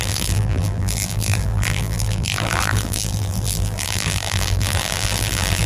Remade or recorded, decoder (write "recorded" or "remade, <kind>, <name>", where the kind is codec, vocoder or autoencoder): remade, vocoder, BigVGAN v2